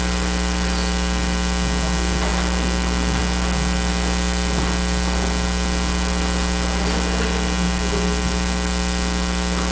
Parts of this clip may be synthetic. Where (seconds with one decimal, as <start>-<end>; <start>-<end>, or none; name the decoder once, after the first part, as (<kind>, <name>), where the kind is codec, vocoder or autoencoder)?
none